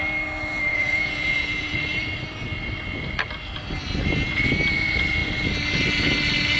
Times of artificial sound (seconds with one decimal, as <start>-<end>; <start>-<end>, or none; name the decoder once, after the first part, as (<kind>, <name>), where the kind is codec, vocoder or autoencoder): 0.7-1.8 (vocoder, Vocos)